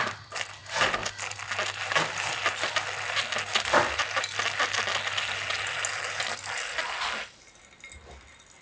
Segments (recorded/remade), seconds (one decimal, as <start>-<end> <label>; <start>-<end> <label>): 0.0-8.6 recorded

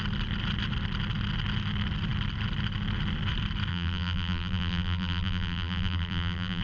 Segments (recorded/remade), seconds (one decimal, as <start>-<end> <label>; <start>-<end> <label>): 0.0-3.7 recorded; 3.7-6.6 remade

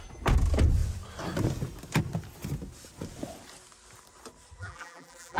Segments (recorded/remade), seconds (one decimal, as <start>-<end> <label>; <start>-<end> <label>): 0.0-4.6 recorded; 4.6-5.4 remade

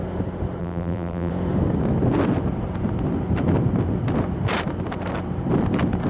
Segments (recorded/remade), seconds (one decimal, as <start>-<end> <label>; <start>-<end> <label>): 0.0-0.6 recorded; 0.6-1.3 remade; 1.3-6.1 recorded

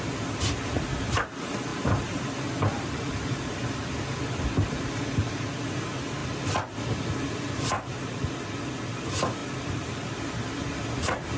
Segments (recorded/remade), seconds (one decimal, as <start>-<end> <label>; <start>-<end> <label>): 0.0-1.7 recorded; 1.7-5.7 remade; 5.7-6.2 recorded; 6.2-7.0 remade; 7.0-9.4 recorded; 9.4-10.5 remade; 10.5-11.4 recorded

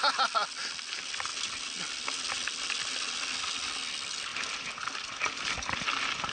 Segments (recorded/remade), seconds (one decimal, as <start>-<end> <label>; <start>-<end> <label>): 0.0-4.3 recorded; 4.3-5.6 remade; 5.6-6.3 recorded